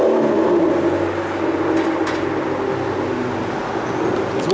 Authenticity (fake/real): real